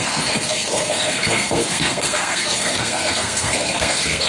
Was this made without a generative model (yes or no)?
no